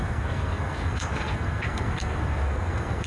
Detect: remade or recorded remade